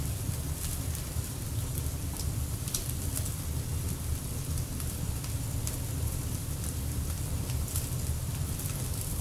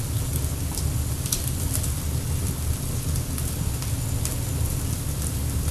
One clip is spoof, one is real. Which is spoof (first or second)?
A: first